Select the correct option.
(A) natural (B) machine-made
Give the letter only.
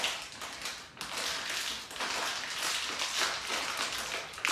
A